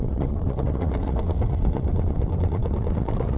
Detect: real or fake fake